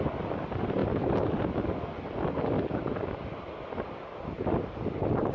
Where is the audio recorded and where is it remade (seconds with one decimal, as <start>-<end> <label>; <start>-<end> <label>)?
0.0-5.3 recorded